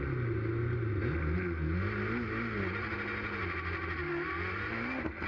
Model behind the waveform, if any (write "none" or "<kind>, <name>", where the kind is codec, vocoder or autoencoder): none